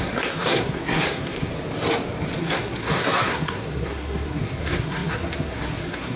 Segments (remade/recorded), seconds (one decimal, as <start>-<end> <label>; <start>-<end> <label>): 0.0-1.5 remade; 1.5-2.4 recorded; 2.4-6.2 remade